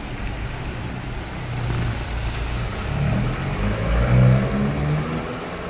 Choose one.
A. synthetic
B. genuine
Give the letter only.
B